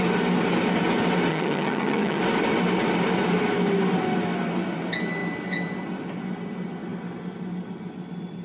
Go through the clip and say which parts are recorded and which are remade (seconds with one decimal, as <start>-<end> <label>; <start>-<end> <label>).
0.0-1.3 recorded; 1.3-2.2 remade; 2.2-8.4 recorded